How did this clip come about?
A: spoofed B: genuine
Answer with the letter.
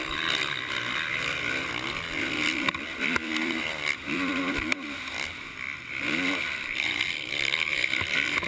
A